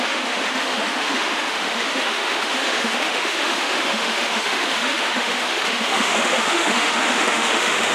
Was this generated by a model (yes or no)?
yes